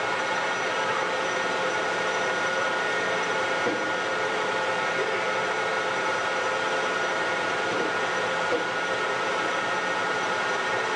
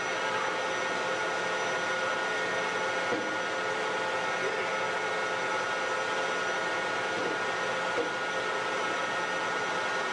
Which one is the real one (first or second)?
second